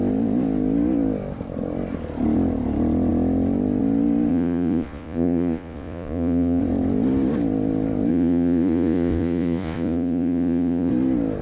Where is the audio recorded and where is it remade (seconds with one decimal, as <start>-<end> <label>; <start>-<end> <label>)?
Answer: 0.0-4.3 recorded; 4.3-6.6 remade; 6.6-8.1 recorded; 8.1-10.9 remade; 10.9-11.4 recorded